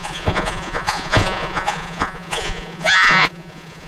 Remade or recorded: remade